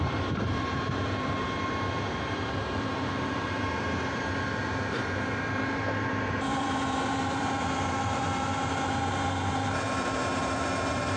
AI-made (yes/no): yes